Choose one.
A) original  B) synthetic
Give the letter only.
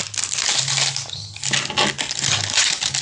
A